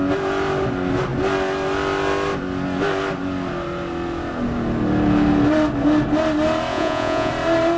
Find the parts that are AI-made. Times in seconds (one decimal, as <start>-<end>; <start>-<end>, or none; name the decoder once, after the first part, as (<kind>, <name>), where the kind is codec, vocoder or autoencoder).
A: 6.7-7.3 (vocoder, Vocos)